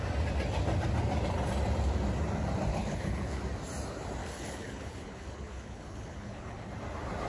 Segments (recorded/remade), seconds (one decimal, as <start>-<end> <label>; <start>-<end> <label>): 0.0-2.7 recorded; 2.7-3.4 remade; 3.4-4.2 recorded; 4.2-6.7 remade; 6.7-7.3 recorded